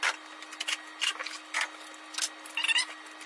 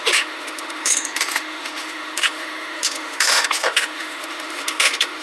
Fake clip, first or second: second